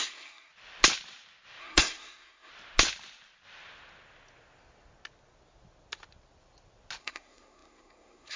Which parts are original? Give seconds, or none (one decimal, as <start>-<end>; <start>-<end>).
0.5-1.6; 2.5-7.0